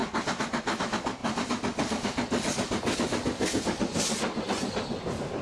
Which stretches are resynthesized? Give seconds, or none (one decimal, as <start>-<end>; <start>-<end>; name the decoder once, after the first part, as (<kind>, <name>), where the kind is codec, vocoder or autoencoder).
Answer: none